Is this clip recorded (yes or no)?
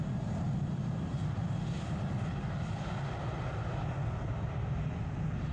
yes